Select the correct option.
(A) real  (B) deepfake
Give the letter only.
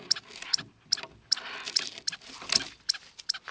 A